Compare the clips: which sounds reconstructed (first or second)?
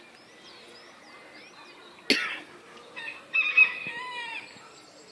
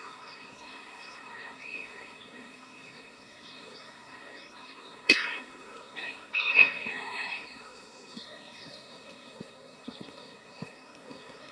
second